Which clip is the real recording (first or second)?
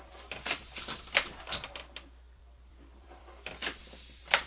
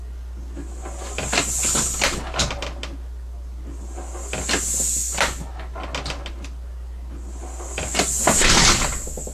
second